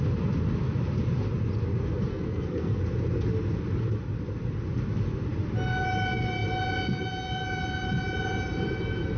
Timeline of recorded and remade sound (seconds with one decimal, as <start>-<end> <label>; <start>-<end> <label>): 0.0-2.1 recorded; 2.1-2.8 remade; 2.8-9.2 recorded